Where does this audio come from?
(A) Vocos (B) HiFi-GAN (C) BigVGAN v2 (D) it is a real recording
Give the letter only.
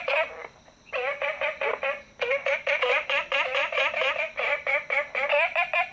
C